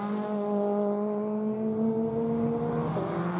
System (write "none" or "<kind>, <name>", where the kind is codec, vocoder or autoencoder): none